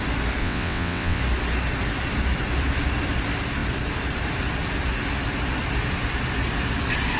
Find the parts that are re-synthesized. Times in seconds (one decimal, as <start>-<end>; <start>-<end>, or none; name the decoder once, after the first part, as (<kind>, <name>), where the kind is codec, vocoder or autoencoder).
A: 0.4-1.2 (vocoder, WaveNeXt)